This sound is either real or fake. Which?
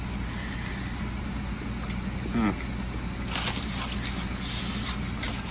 real